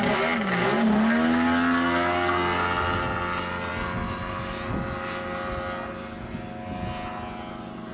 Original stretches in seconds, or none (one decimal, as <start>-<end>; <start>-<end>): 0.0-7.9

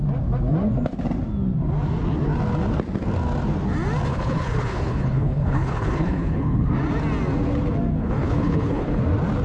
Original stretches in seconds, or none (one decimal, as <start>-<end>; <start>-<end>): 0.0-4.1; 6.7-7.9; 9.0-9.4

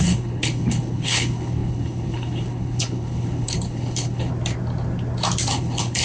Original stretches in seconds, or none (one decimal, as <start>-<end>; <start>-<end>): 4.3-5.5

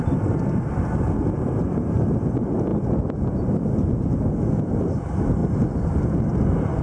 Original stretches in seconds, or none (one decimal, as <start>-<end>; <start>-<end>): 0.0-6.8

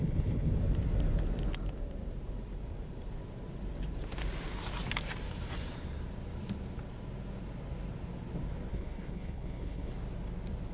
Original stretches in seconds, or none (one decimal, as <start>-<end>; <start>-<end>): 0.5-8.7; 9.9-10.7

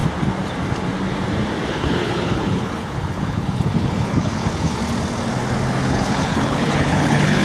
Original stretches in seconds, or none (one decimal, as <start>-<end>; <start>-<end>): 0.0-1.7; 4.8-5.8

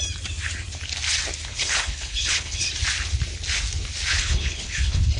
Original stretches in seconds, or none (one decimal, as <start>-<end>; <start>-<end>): 0.0-1.5; 2.7-4.1

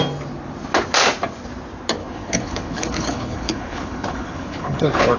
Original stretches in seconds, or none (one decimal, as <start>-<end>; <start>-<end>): 0.0-2.0